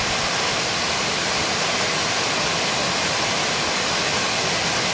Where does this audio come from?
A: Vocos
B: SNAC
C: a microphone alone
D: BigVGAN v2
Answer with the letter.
C